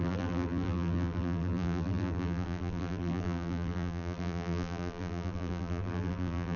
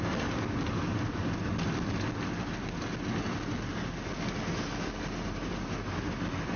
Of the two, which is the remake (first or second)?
first